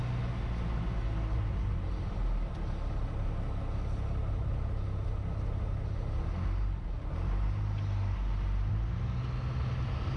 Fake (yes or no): no